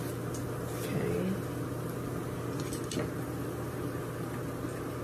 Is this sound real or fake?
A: real